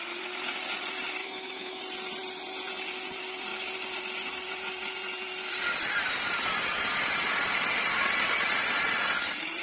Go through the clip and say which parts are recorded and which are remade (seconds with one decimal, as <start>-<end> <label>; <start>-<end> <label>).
0.0-1.2 recorded; 1.2-1.8 remade; 1.8-9.6 recorded